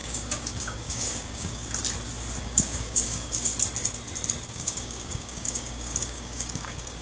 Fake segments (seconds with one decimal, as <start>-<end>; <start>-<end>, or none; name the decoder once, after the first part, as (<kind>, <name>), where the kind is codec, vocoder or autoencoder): 0.0-1.8 (codec, DAC); 2.4-3.5; 4.5-7.0